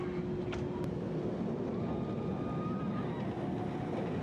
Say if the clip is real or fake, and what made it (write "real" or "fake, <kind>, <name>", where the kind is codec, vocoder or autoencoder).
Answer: real